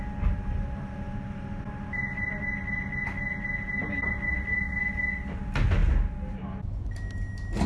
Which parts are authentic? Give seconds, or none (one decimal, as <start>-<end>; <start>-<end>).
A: 0.0-7.7